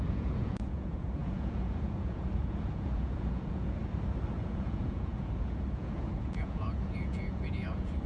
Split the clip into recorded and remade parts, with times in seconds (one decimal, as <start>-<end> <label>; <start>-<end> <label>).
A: 0.0-3.8 remade; 3.8-4.3 recorded; 4.3-8.1 remade